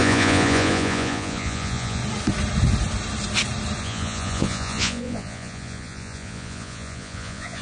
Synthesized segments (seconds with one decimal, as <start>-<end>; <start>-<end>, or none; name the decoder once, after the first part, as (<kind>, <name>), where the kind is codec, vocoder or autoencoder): 0.0-2.0 (vocoder, Vocos); 3.8-7.6